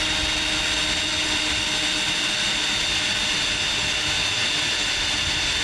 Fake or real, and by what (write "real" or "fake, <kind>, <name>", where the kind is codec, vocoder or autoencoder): real